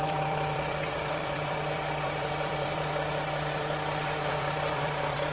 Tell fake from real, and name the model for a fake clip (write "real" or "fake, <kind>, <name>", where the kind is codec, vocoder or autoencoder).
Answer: fake, vocoder, BigVGAN v2